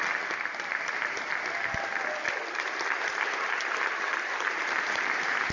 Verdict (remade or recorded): recorded